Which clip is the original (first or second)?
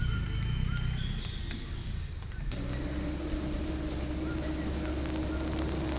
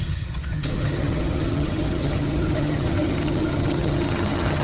first